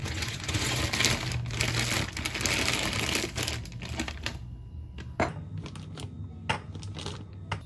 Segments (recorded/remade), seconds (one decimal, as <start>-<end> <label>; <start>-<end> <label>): 0.0-0.8 remade; 0.8-7.7 recorded